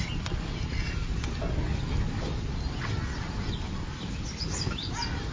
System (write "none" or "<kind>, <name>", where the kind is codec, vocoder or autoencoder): none